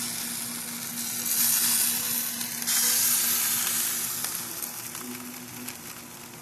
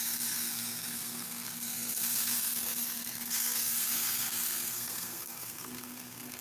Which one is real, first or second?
first